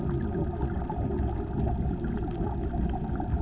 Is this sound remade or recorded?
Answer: recorded